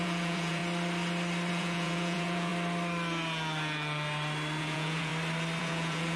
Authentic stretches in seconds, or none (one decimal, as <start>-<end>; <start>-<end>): 0.6-1.5; 2.5-4.6; 5.1-5.6